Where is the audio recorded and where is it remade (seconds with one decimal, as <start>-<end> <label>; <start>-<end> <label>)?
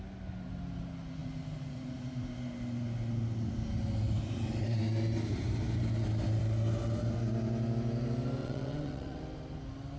0.0-8.4 recorded; 8.4-9.2 remade; 9.2-10.0 recorded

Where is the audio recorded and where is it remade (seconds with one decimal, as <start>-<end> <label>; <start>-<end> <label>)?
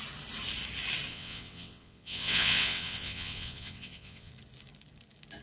0.0-1.1 recorded; 1.1-4.3 remade; 4.3-5.4 recorded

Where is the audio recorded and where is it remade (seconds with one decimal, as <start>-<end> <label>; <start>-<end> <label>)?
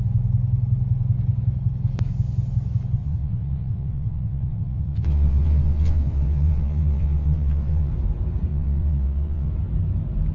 0.0-3.0 recorded; 3.0-7.9 remade; 7.9-8.5 recorded; 8.5-9.5 remade; 9.5-10.3 recorded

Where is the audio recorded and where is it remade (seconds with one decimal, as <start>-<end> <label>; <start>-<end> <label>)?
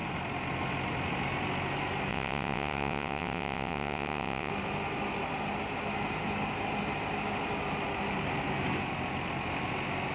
0.0-2.1 recorded; 2.1-4.5 remade; 4.5-10.1 recorded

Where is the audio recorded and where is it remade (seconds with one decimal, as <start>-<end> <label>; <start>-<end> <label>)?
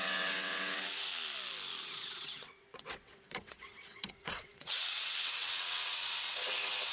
0.0-1.1 remade; 1.1-1.8 recorded; 1.8-6.9 remade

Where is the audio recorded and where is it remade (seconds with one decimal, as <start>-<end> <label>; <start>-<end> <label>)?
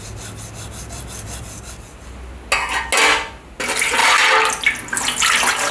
0.0-5.7 recorded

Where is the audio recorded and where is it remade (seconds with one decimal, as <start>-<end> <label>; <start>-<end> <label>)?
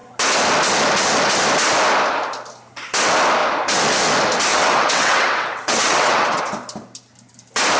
0.0-4.5 recorded; 4.5-6.4 remade; 6.4-7.8 recorded